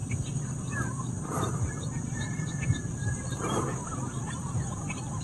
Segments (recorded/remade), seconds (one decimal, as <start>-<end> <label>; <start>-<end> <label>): 0.0-5.2 remade